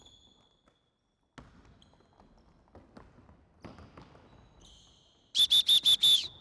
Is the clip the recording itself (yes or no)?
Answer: yes